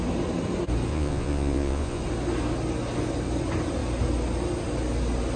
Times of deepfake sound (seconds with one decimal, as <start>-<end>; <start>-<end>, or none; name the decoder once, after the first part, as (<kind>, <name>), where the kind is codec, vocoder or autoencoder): 0.9-2.0 (vocoder, Vocos)